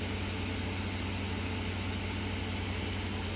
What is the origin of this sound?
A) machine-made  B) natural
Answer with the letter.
B